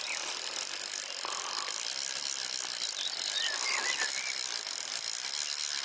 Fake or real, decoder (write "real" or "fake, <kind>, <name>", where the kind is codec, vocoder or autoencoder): real